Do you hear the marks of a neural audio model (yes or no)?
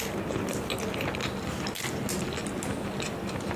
no